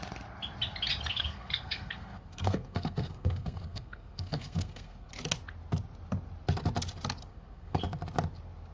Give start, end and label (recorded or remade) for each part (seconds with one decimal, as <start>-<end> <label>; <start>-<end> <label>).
0.0-1.1 recorded; 1.1-5.1 remade; 5.1-7.3 recorded; 7.3-7.8 remade; 7.8-8.7 recorded